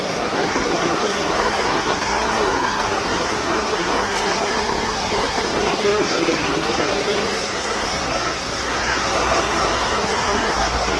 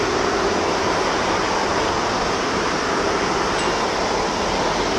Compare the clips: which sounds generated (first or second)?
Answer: first